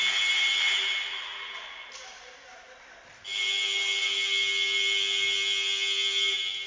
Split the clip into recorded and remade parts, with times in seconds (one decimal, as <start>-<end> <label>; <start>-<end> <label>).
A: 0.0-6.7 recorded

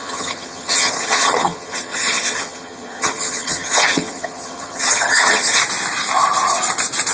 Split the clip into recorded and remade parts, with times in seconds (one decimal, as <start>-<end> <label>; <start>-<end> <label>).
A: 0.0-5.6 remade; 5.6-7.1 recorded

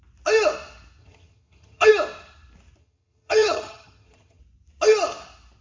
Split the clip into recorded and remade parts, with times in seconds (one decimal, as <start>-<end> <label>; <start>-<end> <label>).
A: 0.0-1.0 recorded; 1.0-1.9 remade; 1.9-2.8 recorded; 2.8-4.4 remade; 4.4-5.6 recorded

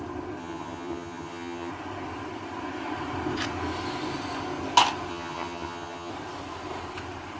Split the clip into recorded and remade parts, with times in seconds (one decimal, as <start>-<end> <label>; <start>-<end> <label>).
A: 0.0-0.4 recorded; 0.4-1.7 remade; 1.7-5.1 recorded; 5.1-6.1 remade; 6.1-7.4 recorded

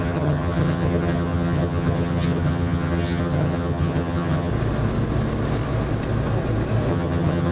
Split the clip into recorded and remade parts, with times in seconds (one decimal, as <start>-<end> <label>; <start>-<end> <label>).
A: 0.0-4.5 remade; 4.5-6.9 recorded; 6.9-7.5 remade

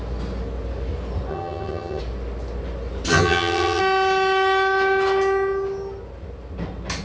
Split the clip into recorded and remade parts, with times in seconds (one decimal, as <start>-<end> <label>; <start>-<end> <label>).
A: 0.0-1.3 recorded; 1.3-2.0 remade; 2.0-3.1 recorded; 3.1-3.8 remade; 3.8-7.0 recorded

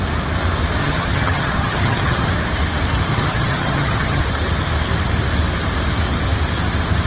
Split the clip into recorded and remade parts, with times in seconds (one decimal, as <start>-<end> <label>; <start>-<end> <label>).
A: 0.0-0.8 recorded; 0.8-2.3 remade; 2.3-3.1 recorded; 3.1-4.2 remade; 4.2-7.1 recorded

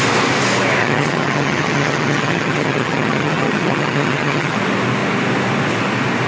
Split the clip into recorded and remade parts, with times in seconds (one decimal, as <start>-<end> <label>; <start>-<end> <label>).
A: 0.0-0.8 recorded; 0.8-4.6 remade; 4.6-6.3 recorded